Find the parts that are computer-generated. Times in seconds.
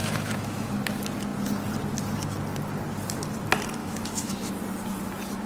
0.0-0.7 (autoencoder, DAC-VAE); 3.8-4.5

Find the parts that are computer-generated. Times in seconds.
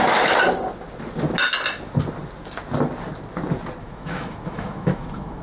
3.8-5.4 (autoencoder, DAC-VAE)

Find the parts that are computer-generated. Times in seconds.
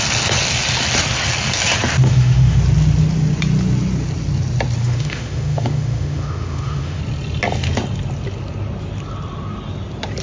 2.0-2.6 (autoencoder, DAC-VAE); 4.8-7.0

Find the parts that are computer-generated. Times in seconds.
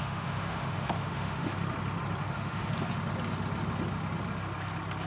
0.0-1.5 (autoencoder, DAC-VAE); 2.2-2.7